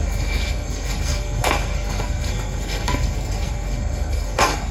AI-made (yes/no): yes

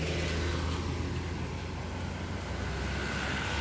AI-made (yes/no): no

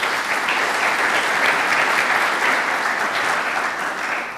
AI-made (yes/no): no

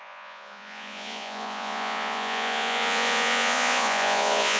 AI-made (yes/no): yes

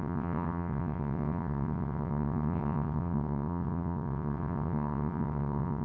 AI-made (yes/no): yes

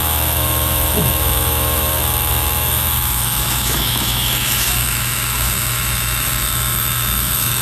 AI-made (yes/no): yes